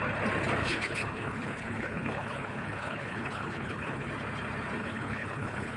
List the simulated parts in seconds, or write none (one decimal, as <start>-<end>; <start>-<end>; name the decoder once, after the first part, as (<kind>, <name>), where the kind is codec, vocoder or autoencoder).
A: 0.6-4.1 (codec, HILCodec); 4.8-5.8